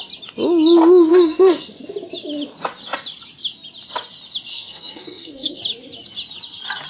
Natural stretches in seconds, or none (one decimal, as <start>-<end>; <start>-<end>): 0.0-1.1; 1.8-4.5; 5.6-6.9